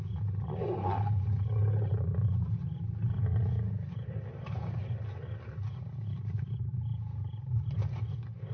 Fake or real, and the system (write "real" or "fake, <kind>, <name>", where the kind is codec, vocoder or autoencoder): real